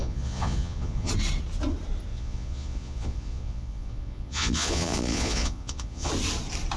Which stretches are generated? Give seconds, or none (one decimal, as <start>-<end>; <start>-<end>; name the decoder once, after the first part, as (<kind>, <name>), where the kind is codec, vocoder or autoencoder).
0.0-1.1 (vocoder, Vocos); 2.1-6.1